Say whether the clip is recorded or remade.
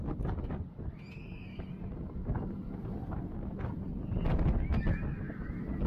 recorded